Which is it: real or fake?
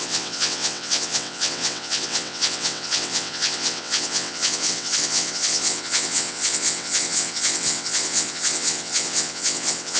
fake